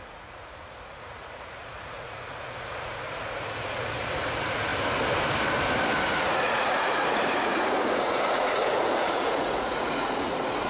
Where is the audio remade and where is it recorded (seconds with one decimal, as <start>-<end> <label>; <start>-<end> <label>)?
0.0-4.7 remade; 4.7-6.1 recorded; 6.1-10.7 remade